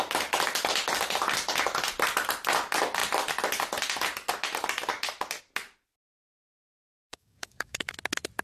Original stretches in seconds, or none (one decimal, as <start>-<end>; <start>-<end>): 0.0-6.3; 7.9-8.4